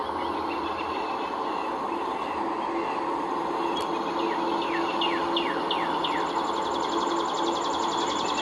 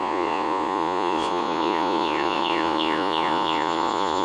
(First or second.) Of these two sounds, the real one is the first